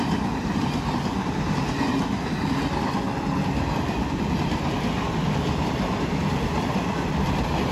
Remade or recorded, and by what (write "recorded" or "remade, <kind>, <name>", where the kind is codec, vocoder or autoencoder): recorded